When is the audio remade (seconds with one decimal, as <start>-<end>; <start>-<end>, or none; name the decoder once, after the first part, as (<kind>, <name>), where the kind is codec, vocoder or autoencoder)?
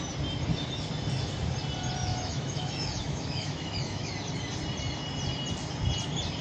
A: 2.1-4.1 (autoencoder, DAC-VAE)